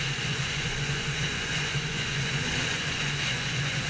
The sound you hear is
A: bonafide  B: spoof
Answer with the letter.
B